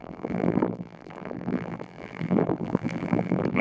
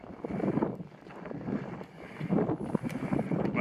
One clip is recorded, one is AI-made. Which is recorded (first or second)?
second